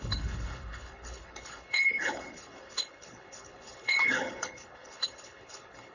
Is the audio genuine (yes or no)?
no